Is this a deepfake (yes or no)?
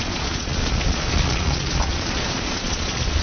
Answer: yes